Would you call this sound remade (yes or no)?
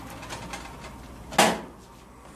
no